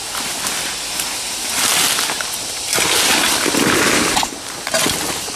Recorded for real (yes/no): yes